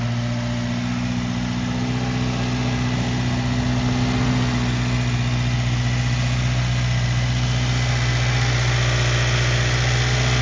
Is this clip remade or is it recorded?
recorded